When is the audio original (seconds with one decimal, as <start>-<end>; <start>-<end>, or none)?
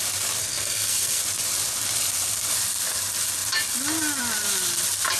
0.0-0.4; 1.2-5.2